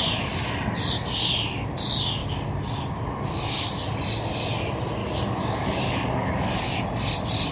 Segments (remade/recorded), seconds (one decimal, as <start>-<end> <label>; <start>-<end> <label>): 0.0-5.0 recorded; 5.0-6.8 remade; 6.8-7.5 recorded